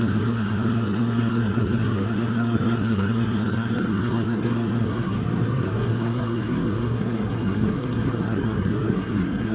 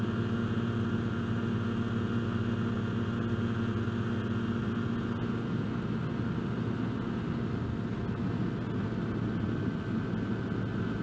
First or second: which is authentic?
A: second